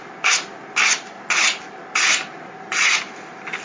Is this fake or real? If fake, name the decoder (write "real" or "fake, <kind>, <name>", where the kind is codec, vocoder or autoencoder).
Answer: real